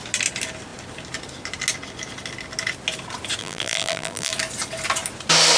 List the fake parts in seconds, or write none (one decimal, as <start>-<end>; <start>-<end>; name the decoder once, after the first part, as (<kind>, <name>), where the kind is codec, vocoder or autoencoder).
3.4-4.3 (vocoder, BigVGAN v2)